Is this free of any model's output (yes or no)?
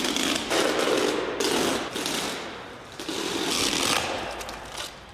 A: yes